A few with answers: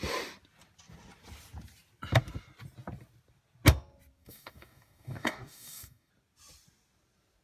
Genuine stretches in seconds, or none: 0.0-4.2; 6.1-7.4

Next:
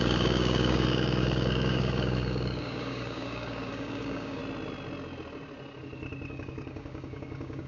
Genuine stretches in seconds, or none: 4.4-6.3

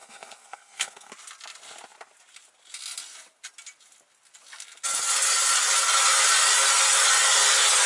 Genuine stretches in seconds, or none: 1.1-7.9

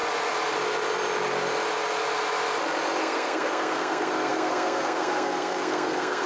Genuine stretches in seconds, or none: 0.0-3.0

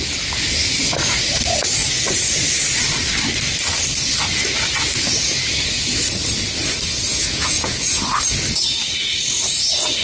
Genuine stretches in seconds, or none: 0.0-7.1; 8.0-10.0

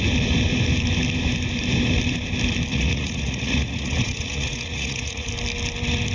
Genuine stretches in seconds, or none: 0.0-2.7; 5.3-6.1

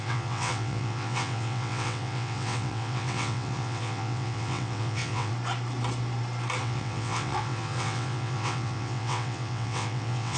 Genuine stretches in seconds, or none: 5.3-6.6